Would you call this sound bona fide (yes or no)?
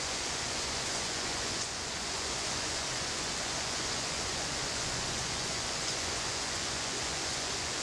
no